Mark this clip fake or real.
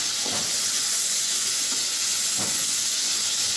fake